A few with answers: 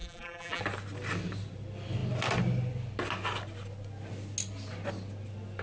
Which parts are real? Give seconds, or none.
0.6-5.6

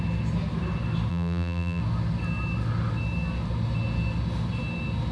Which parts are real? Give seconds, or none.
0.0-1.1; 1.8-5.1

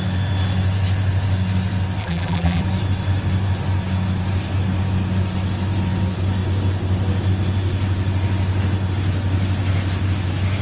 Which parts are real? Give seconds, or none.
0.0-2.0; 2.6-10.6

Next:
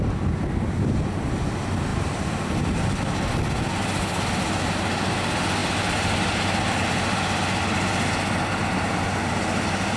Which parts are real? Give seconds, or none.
0.0-1.9; 3.3-10.0

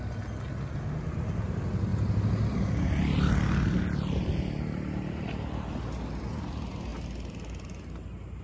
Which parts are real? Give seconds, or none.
0.0-8.4